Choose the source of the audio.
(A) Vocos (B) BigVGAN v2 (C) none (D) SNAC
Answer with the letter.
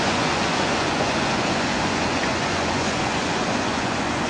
A